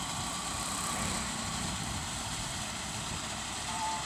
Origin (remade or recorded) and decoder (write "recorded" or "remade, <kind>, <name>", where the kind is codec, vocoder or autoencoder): remade, vocoder, BigVGAN v2